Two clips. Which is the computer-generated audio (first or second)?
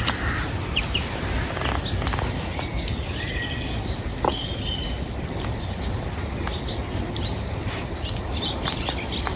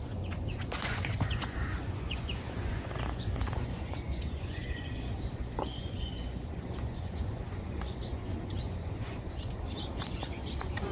second